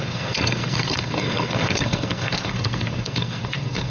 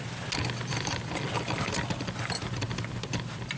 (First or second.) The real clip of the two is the second